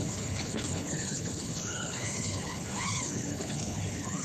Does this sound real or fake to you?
fake